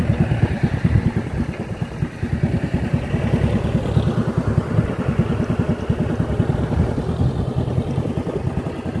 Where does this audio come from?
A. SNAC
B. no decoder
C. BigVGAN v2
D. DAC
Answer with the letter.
B